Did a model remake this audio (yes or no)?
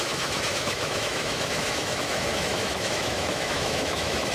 yes